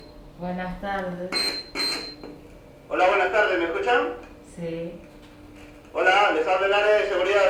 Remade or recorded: recorded